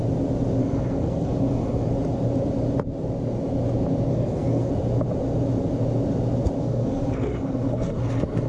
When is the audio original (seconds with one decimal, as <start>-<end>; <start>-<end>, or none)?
0.0-0.6; 1.9-4.1; 4.7-6.6